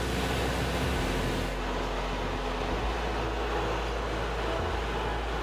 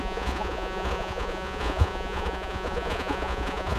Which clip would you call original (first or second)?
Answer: first